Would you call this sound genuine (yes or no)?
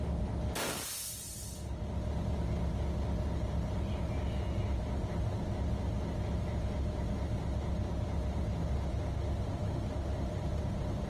yes